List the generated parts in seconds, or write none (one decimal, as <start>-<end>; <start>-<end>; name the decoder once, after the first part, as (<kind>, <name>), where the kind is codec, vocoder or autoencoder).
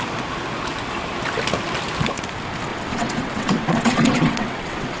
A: 2.7-5.0 (vocoder, WaveNeXt)